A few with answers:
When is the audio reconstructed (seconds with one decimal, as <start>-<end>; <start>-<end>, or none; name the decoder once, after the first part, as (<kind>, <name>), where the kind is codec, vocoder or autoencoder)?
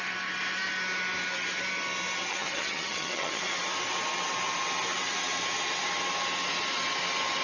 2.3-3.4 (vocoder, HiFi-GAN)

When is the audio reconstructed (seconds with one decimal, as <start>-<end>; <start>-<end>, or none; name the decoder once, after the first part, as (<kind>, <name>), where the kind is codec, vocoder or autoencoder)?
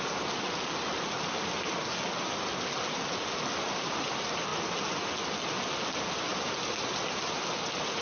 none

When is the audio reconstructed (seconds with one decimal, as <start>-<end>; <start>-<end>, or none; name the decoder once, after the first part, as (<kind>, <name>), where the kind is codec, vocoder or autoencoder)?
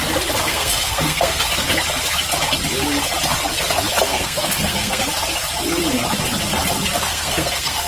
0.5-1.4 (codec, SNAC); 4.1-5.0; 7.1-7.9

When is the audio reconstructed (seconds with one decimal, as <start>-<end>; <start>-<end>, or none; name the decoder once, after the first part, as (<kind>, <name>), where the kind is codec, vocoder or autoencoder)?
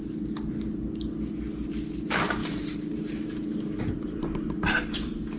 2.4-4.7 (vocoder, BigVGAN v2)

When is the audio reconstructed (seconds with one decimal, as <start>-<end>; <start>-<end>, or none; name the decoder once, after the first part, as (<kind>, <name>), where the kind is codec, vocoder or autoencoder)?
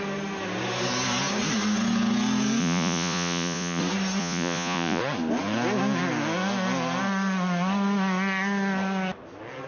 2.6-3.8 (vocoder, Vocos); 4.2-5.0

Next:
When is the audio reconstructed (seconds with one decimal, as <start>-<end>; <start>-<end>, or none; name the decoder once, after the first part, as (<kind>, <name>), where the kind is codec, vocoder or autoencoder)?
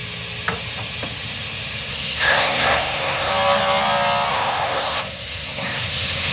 1.9-3.3 (codec, SNAC); 4.3-6.3